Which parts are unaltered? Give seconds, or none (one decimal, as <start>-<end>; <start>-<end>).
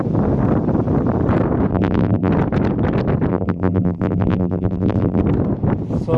0.0-1.7; 2.3-3.3; 5.2-6.2